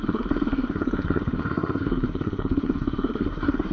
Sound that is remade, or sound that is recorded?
remade